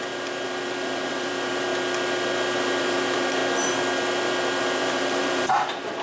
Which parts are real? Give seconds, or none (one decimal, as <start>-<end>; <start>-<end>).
1.7-2.8; 3.4-4.6